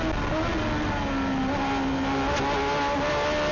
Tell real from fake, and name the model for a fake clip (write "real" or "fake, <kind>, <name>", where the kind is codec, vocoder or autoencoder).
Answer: real